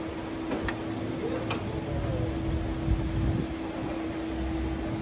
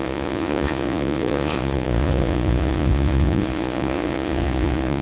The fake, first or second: second